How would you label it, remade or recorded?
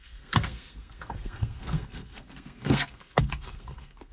remade